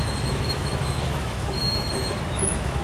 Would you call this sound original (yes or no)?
no